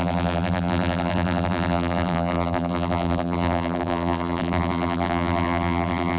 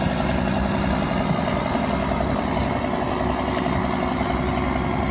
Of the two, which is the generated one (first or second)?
first